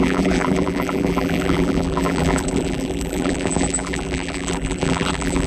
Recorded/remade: remade